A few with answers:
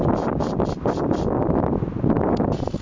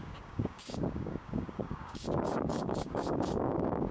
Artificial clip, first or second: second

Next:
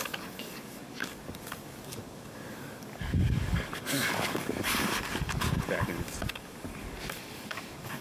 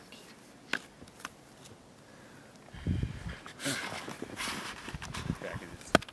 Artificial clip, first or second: first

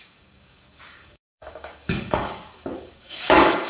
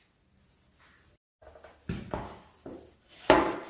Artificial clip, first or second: first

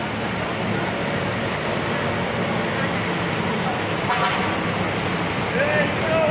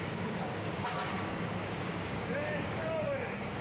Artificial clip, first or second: second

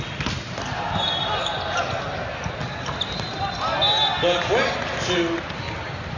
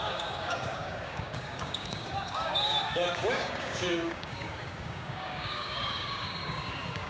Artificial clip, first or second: second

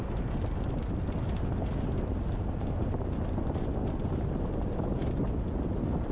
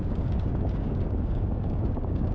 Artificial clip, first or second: second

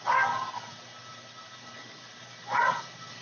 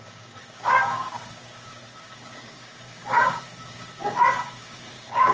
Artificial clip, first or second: second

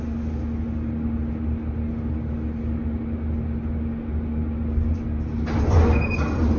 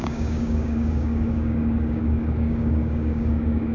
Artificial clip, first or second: second